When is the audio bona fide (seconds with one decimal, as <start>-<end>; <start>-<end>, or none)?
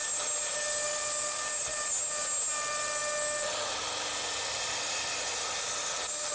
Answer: 0.0-6.3